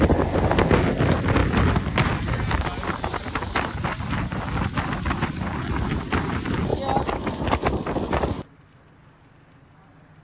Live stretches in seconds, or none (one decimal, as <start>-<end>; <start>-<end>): 0.0-10.2